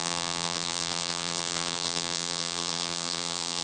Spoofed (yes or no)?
yes